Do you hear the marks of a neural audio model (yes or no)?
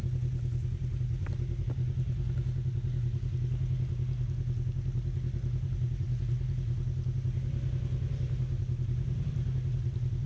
no